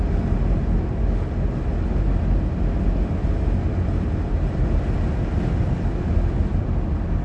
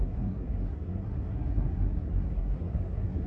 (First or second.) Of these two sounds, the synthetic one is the second